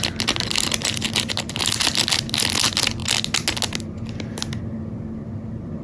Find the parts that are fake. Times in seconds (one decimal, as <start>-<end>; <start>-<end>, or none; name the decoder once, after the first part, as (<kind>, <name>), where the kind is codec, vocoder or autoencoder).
none